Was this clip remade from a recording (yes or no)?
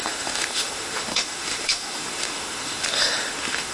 yes